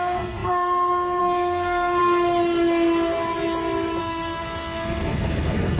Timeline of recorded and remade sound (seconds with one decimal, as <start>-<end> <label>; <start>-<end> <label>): 0.0-2.0 remade; 2.0-4.0 recorded; 4.0-5.8 remade